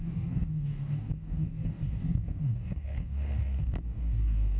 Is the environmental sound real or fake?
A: fake